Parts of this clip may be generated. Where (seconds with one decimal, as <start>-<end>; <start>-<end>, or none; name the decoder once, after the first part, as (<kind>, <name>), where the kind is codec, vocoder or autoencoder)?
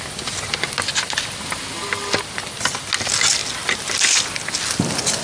none